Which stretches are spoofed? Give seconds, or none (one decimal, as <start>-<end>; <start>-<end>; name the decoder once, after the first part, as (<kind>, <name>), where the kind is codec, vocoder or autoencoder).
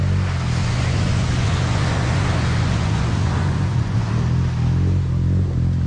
0.6-4.1 (vocoder, Vocos)